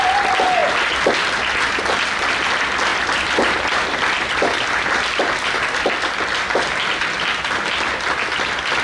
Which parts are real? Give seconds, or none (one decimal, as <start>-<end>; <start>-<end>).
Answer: 0.0-2.9; 5.4-8.8